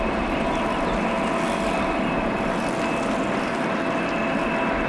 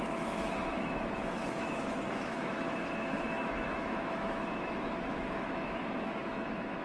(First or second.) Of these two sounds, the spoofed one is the second